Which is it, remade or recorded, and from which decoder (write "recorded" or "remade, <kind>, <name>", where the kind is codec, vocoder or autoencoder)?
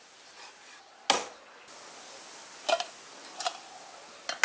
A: recorded